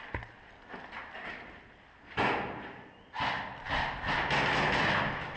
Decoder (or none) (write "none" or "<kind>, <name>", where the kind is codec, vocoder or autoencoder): none